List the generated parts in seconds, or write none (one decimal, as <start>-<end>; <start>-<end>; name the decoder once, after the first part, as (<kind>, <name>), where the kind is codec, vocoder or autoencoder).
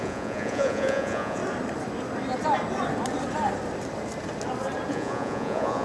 0.0-1.4 (vocoder, Vocos); 4.9-5.8